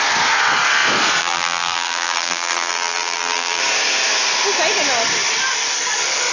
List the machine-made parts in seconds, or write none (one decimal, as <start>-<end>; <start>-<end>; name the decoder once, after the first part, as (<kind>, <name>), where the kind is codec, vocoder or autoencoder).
1.2-3.6 (vocoder, BigVGAN v2)